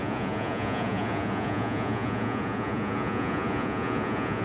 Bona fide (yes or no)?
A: no